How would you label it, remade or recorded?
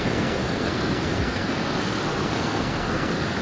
remade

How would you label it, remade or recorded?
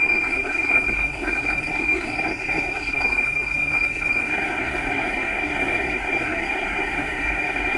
remade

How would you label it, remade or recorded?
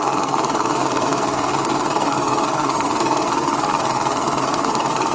remade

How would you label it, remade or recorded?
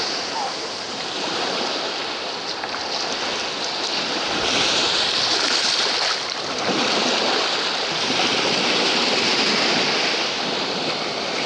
recorded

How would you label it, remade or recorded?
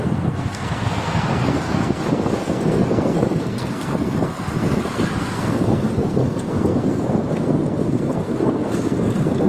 remade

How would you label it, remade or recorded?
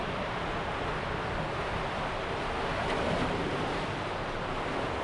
recorded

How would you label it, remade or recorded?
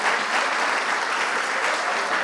recorded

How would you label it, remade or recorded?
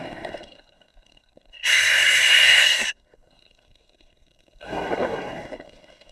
remade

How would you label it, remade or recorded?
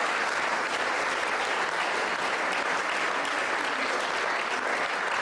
recorded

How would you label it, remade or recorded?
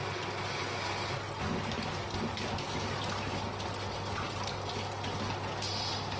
recorded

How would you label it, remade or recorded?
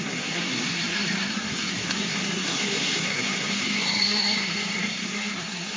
remade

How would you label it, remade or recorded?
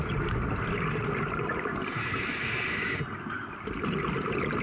recorded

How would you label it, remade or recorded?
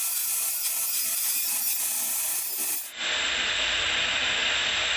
recorded